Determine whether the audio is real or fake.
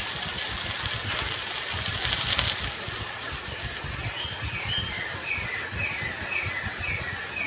real